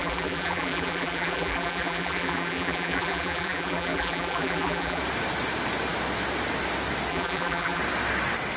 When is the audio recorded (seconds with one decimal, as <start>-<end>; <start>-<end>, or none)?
5.0-7.1; 7.8-8.6